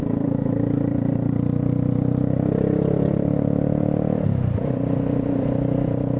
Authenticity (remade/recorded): remade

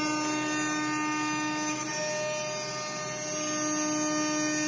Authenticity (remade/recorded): recorded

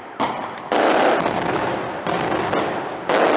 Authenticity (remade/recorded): recorded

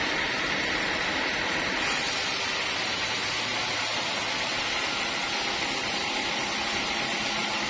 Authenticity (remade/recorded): recorded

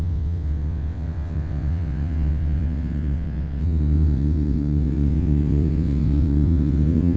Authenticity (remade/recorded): remade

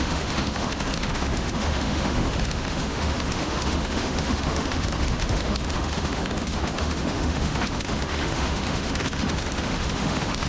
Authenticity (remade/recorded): remade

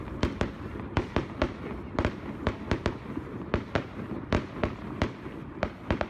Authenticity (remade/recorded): recorded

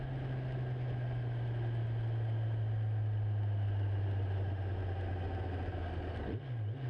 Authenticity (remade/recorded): recorded